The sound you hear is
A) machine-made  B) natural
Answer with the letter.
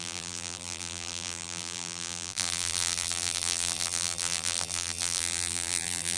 A